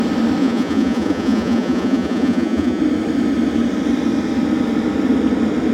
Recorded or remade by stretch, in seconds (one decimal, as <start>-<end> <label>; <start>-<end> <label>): 0.0-0.4 recorded; 0.4-2.8 remade; 2.8-5.7 recorded